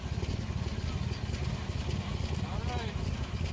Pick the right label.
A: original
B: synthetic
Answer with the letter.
A